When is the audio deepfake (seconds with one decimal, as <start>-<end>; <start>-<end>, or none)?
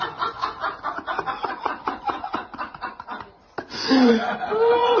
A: 0.0-0.4; 1.5-3.1; 4.1-5.0